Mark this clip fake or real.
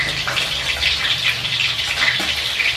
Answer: real